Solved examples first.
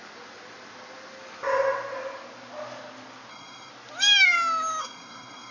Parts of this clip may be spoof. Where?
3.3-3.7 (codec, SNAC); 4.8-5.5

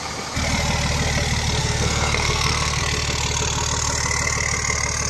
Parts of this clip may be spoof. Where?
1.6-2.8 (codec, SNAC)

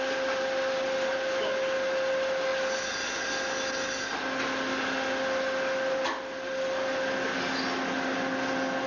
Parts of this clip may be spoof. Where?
none